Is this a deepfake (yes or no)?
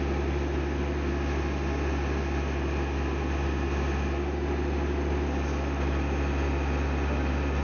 no